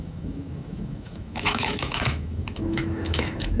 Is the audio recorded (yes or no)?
no